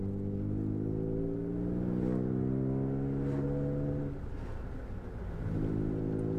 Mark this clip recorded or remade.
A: recorded